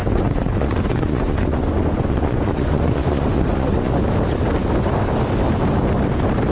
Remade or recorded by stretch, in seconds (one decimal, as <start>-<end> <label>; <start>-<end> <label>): 0.0-3.9 remade; 3.9-6.5 recorded